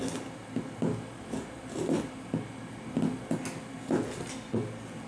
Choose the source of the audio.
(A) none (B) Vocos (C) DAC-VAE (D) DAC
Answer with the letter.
A